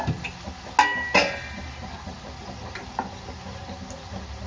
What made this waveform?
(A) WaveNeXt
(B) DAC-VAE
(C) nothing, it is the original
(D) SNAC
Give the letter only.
C